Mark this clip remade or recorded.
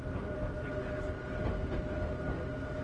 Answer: recorded